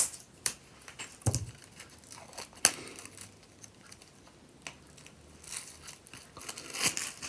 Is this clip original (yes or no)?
yes